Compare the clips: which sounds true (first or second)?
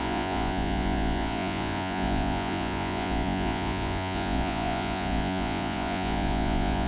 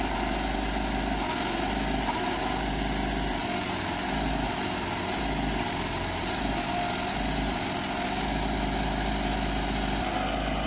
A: second